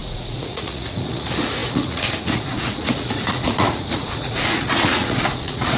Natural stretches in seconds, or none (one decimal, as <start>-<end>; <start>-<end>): none